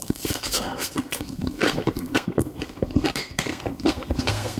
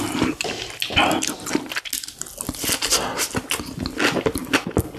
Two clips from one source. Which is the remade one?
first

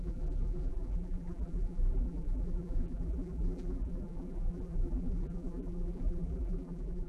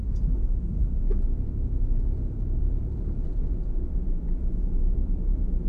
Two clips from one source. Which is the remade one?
first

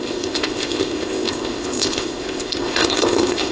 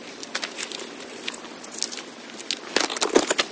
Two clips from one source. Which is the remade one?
first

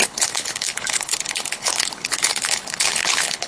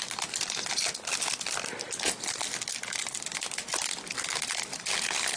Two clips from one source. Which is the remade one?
first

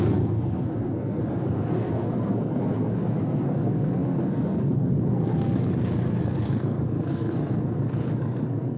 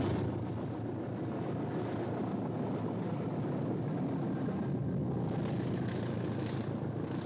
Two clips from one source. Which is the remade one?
first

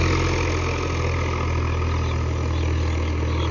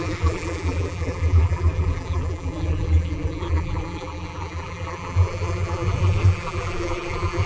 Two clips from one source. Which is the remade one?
second